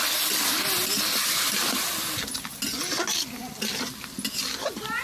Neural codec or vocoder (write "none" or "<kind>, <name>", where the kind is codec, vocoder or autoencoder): none